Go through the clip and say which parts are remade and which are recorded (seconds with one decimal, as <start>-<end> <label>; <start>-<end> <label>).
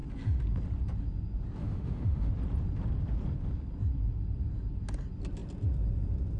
0.0-1.6 recorded; 1.6-2.3 remade; 2.3-6.4 recorded